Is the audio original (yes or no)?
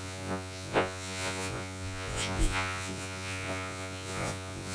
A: no